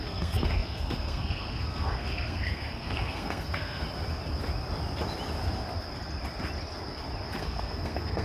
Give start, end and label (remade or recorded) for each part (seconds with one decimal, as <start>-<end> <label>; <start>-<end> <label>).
0.0-3.8 remade; 3.8-7.4 recorded; 7.4-8.2 remade